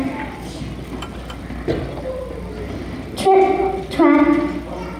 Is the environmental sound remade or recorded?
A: recorded